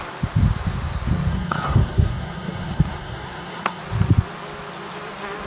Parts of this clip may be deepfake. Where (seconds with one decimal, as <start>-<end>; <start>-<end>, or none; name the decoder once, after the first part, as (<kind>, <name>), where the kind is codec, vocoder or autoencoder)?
1.3-3.8 (codec, SNAC)